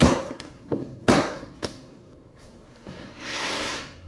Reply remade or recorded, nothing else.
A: remade